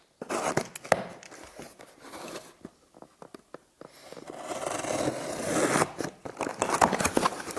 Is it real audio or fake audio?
real